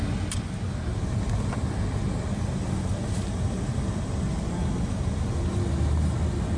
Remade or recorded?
recorded